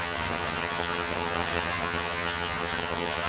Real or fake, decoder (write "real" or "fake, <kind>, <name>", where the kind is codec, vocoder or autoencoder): fake, vocoder, HiFi-GAN